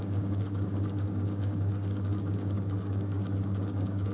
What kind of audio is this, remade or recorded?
remade